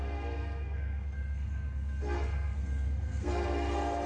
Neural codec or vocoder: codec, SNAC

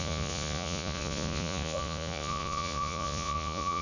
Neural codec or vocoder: vocoder, Vocos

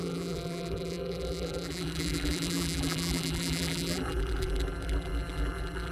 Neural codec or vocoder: vocoder, BigVGAN v2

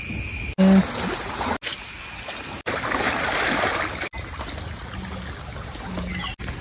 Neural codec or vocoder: none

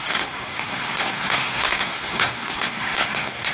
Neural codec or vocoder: codec, SNAC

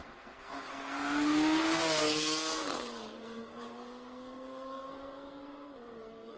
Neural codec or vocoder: codec, SNAC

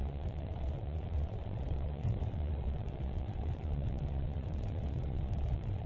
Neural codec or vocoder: vocoder, WaveNeXt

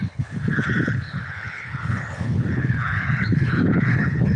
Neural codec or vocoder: codec, HILCodec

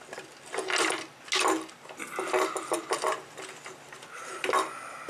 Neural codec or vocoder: none